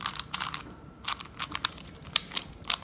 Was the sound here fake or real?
fake